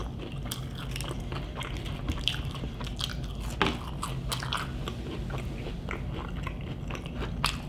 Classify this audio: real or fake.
real